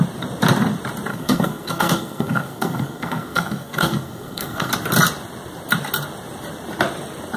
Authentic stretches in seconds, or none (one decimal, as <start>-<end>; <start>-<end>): 0.0-1.1; 4.7-7.4